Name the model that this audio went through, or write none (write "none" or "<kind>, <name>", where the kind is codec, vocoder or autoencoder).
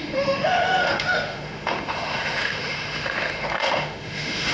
autoencoder, DAC-VAE